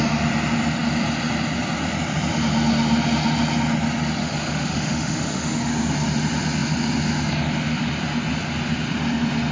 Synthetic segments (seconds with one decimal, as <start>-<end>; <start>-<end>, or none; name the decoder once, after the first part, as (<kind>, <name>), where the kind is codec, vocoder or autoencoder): 4.2-5.7 (autoencoder, DAC-VAE)